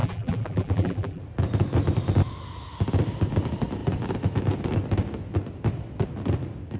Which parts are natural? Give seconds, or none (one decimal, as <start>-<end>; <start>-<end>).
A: 1.2-6.8